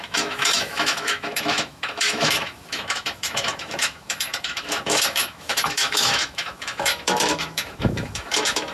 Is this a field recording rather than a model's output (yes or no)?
no